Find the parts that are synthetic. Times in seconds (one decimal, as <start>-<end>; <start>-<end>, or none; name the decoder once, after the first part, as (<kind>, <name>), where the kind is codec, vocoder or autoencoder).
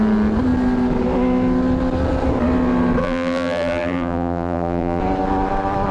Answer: 3.0-5.0 (vocoder, BigVGAN v2)